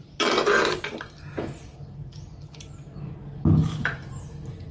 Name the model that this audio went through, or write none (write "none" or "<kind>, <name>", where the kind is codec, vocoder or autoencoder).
none